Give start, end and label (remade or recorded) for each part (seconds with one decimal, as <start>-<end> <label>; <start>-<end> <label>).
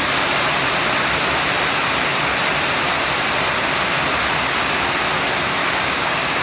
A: 0.0-5.6 recorded; 5.6-6.4 remade